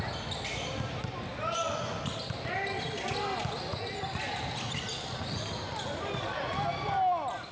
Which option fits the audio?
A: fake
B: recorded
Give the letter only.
B